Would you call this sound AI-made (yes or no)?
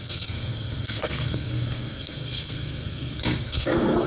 yes